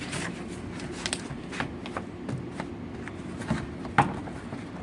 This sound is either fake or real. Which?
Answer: real